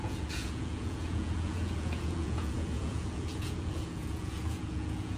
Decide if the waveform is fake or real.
fake